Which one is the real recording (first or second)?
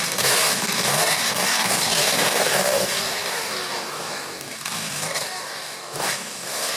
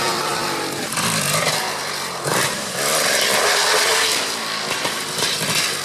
second